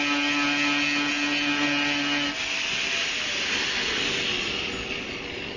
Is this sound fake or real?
real